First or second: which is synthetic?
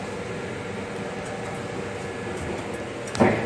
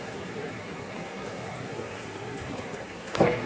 second